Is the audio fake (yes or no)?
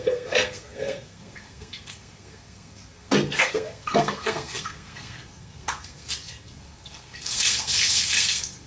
yes